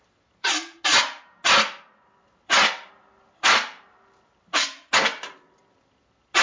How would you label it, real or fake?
real